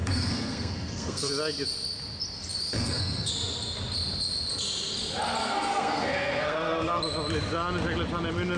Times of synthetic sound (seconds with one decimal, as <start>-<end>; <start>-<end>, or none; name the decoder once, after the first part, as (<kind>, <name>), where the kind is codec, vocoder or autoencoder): 0.0-1.3 (codec, SNAC); 2.7-3.3; 5.4-7.0